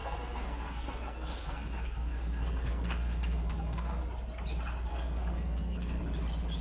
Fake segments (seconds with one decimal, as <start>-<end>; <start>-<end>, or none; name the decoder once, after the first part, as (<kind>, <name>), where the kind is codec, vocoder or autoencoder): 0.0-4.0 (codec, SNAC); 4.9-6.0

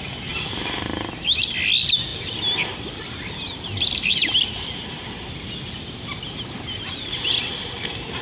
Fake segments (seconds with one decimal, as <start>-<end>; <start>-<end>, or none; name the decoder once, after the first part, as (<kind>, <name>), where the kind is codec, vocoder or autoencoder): none

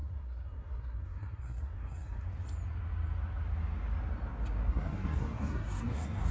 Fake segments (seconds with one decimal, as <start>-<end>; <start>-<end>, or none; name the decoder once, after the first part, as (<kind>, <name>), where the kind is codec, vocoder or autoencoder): 0.0-2.3 (codec, SNAC); 4.7-6.3

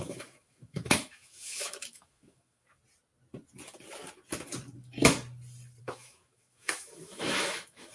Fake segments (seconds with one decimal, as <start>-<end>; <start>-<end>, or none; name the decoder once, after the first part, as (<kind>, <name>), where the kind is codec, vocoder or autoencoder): 0.0-2.8 (autoencoder, DAC-VAE); 5.8-7.9

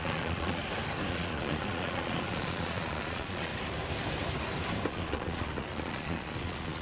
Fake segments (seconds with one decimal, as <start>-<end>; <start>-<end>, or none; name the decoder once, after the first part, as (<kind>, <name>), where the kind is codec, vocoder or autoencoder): 0.0-0.6 (vocoder, Vocos); 1.1-3.5; 4.9-6.8